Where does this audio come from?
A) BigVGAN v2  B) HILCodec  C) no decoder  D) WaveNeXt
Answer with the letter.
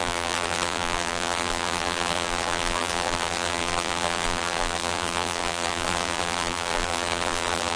A